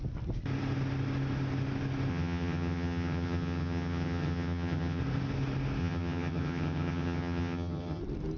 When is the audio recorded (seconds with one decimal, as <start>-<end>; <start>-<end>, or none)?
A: 0.0-2.1; 5.0-5.8; 8.0-8.4